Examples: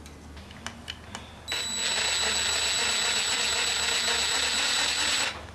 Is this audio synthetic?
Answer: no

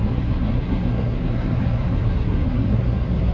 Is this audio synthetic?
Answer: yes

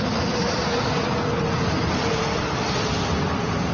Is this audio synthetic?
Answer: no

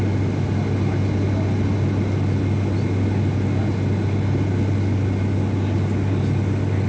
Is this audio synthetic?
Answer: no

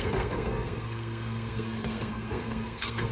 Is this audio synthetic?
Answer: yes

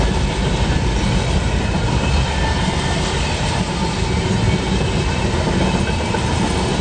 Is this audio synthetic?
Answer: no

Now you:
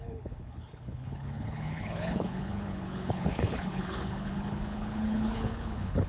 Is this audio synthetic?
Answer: yes